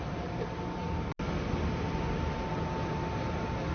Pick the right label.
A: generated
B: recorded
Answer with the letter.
B